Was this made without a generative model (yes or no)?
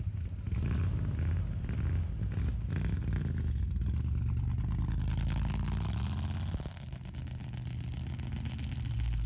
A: yes